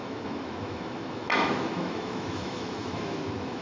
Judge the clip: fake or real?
fake